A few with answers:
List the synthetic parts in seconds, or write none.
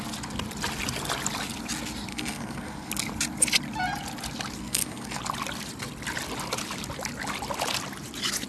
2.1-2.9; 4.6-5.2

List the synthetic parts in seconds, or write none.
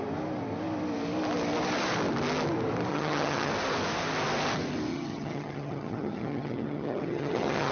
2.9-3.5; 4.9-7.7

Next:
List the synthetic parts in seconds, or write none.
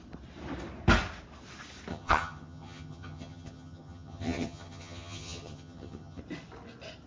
1.9-6.2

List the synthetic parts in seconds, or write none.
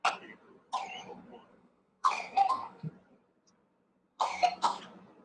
1.5-2.9; 4.1-4.8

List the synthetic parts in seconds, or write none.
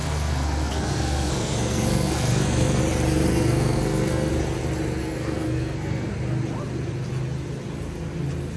0.0-2.8; 3.3-4.3; 5.0-6.1